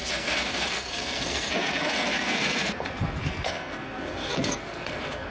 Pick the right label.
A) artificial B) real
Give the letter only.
A